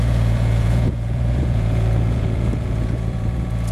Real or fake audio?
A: fake